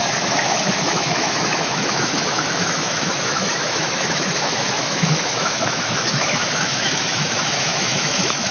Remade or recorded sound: remade